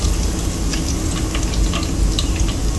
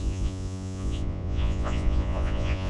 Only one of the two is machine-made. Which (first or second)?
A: second